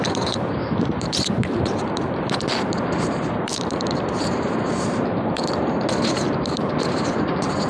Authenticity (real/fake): fake